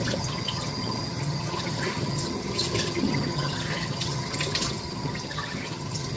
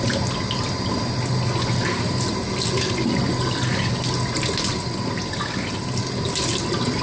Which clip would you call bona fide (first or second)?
second